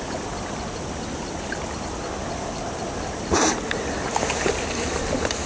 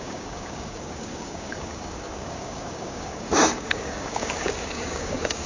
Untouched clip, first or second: first